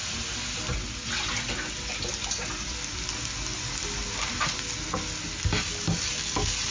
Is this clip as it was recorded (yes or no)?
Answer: yes